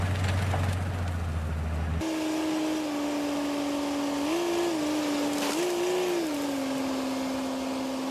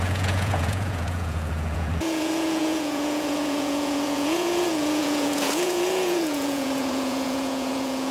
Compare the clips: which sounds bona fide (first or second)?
first